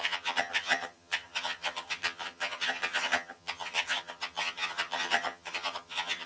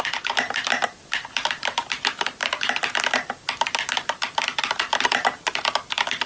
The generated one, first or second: first